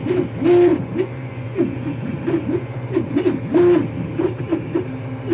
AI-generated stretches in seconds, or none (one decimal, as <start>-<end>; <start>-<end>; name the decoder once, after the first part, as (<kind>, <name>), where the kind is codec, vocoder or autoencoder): 0.7-3.2 (vocoder, Vocos)